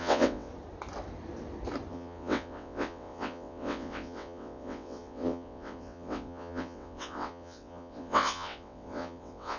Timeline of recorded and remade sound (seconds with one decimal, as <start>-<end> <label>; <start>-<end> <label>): 0.0-0.5 remade; 0.5-1.9 recorded; 1.9-9.6 remade